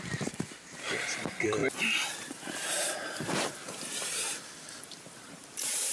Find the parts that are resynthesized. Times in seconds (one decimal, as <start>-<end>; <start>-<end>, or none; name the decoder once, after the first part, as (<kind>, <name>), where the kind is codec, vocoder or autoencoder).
0.0-1.6 (vocoder, BigVGAN v2); 3.4-5.9